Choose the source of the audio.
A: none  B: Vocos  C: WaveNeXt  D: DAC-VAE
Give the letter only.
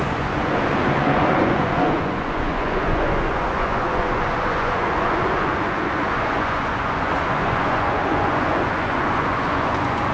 B